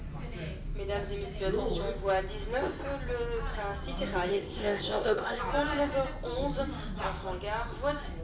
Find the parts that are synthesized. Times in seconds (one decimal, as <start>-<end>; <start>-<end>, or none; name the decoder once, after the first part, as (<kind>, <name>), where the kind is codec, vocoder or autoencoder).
4.3-5.4 (codec, ZipCodec)